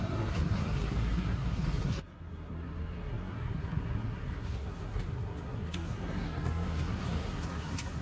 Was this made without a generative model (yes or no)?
no